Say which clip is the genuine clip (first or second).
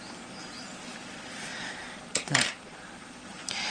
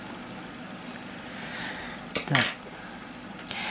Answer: second